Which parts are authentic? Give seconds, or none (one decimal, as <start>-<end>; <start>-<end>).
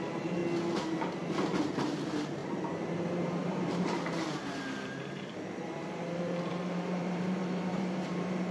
0.4-1.7